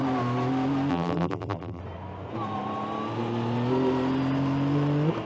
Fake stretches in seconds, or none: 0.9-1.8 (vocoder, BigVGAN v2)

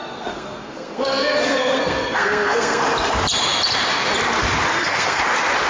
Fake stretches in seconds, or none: 0.0-2.8 (codec, SNAC); 4.7-5.2

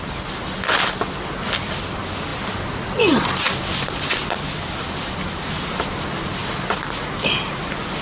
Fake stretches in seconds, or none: none